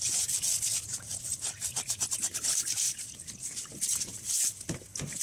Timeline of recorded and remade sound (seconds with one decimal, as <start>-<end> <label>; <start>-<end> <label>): 0.0-5.2 recorded